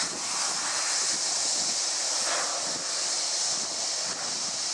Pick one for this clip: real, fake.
real